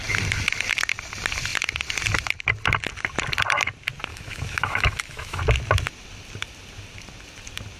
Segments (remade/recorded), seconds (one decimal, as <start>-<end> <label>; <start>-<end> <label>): 0.0-4.1 recorded; 4.1-5.4 remade; 5.4-7.8 recorded